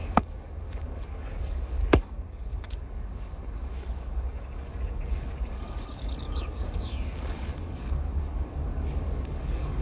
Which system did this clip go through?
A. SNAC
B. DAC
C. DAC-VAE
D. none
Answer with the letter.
B